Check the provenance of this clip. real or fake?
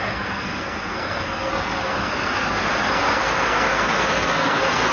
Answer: fake